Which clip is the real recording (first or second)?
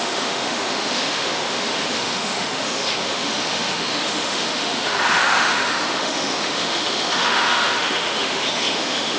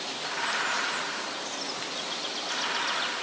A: second